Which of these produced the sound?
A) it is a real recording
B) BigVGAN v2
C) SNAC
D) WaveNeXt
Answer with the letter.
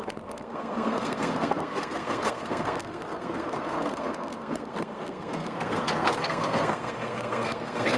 C